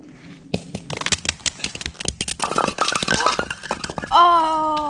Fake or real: real